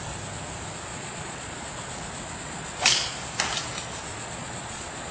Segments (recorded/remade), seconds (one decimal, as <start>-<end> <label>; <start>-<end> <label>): 0.0-0.9 recorded; 0.9-1.6 remade; 1.6-4.1 recorded; 4.1-5.1 remade